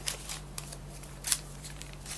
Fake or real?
fake